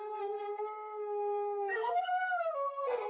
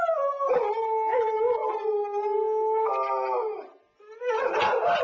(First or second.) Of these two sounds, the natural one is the second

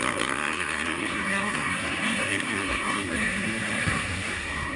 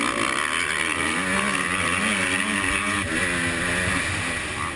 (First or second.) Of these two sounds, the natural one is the second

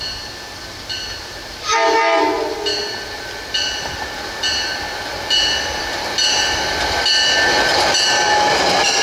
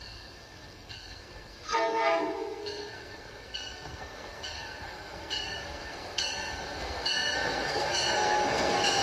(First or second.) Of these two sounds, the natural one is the first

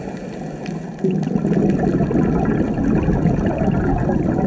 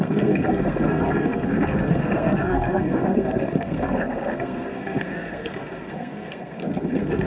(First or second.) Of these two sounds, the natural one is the first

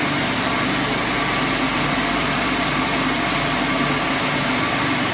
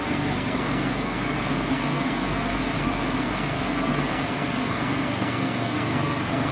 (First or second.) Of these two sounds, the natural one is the first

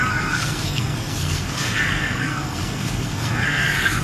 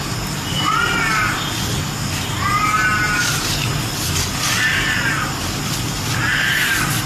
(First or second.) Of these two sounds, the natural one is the second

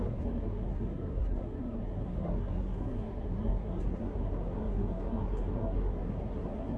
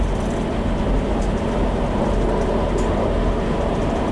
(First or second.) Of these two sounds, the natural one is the second